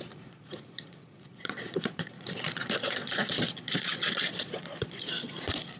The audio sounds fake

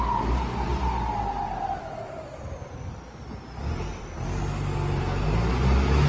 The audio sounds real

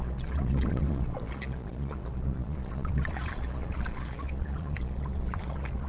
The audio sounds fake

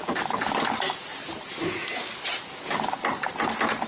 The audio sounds real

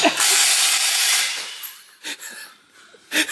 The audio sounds real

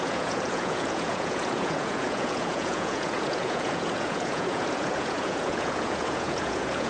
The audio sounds fake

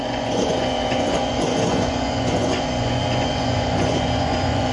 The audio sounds fake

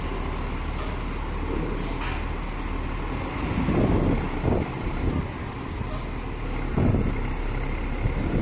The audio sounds real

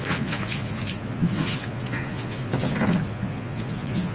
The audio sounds fake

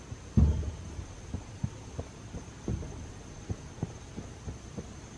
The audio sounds real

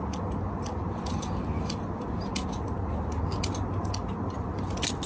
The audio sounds real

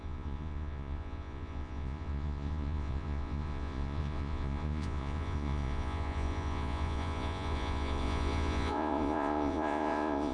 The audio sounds fake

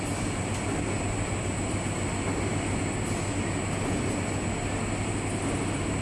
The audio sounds real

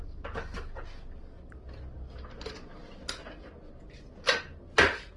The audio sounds real